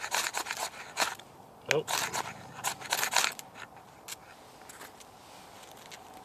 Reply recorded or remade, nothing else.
recorded